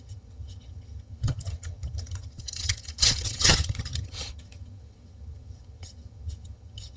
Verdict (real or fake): fake